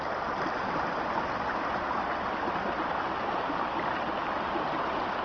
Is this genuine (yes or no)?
yes